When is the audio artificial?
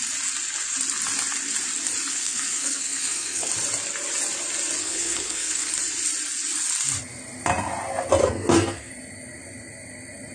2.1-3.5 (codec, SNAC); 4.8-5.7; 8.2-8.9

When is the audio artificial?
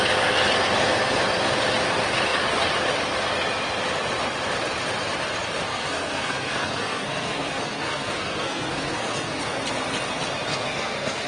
5.7-9.4 (codec, SNAC); 10.5-11.3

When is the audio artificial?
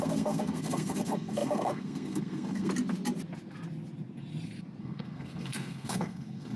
0.0-2.7 (codec, SNAC); 4.8-6.6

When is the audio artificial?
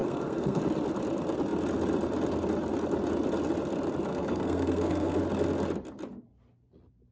0.0-0.6 (codec, SNAC); 4.1-5.2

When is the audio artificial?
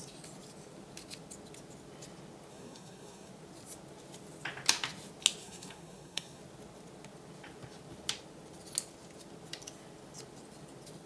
2.5-3.3 (codec, SNAC); 5.4-6.4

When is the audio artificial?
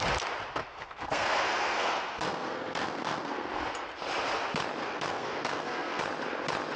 0.6-3.5 (codec, SNAC); 4.8-6.0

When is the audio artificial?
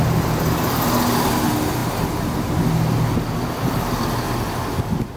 none